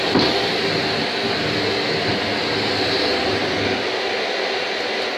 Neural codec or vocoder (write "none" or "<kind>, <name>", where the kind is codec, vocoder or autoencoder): none